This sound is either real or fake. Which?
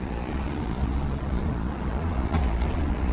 fake